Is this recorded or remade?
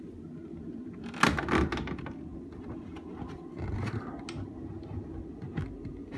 recorded